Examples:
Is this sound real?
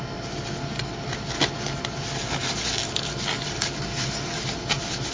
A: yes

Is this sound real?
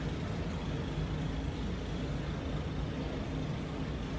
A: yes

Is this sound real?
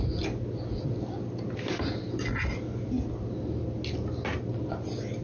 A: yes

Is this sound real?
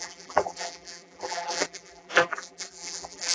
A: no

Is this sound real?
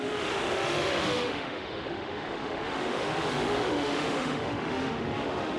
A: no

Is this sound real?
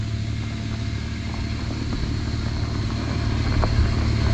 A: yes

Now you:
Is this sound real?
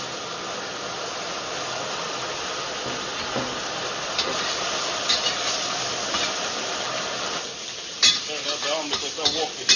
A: yes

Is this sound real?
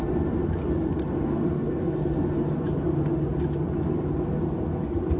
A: yes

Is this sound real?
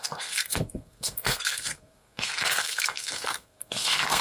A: no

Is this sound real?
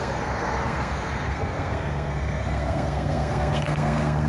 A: no